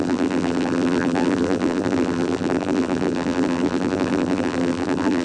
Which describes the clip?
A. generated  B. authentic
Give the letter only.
A